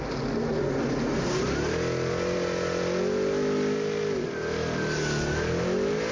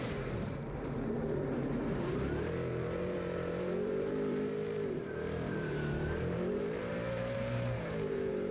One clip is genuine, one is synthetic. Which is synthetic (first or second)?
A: second